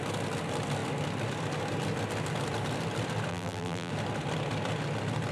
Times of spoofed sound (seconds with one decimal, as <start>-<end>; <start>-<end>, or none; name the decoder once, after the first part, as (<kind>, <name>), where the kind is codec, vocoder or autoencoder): 3.3-3.9 (vocoder, BigVGAN v2)